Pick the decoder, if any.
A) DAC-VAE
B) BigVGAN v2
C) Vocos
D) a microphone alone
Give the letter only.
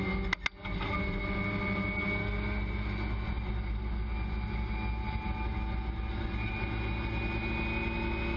D